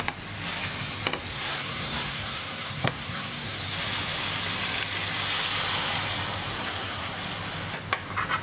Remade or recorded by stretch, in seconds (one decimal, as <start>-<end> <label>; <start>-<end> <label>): 0.0-1.3 recorded; 1.3-3.6 remade; 3.6-6.5 recorded; 6.5-7.1 remade; 7.1-8.4 recorded